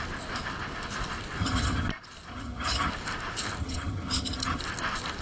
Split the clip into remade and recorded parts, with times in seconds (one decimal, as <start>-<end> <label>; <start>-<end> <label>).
0.0-1.4 recorded; 1.4-1.9 remade; 1.9-2.3 recorded; 2.3-2.9 remade; 2.9-3.6 recorded; 3.6-4.6 remade; 4.6-5.2 recorded